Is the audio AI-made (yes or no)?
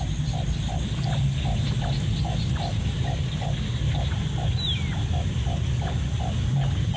no